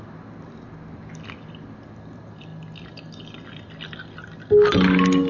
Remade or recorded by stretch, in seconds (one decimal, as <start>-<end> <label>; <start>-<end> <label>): 0.0-5.3 recorded